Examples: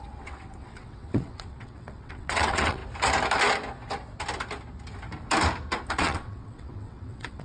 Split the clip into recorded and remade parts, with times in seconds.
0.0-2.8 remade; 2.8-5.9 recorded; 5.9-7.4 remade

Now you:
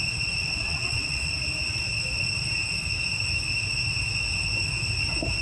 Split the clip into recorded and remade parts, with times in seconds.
0.0-0.4 recorded; 0.4-1.3 remade; 1.3-5.4 recorded